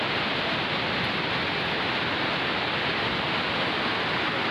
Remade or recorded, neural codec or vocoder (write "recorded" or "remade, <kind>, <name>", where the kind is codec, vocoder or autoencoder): recorded